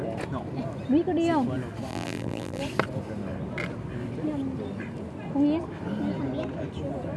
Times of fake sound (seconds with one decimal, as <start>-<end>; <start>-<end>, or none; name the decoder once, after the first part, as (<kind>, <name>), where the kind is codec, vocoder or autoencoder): 1.9-2.6 (vocoder, BigVGAN v2)